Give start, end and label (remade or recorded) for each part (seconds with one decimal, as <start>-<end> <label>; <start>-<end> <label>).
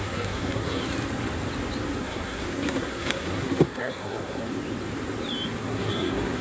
0.0-0.8 remade; 0.8-2.0 recorded; 2.0-4.4 remade; 4.4-5.6 recorded; 5.6-6.4 remade